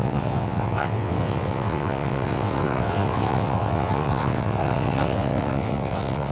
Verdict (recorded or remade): remade